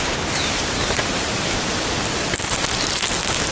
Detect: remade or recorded recorded